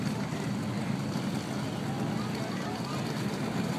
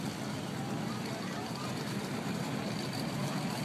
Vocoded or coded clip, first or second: second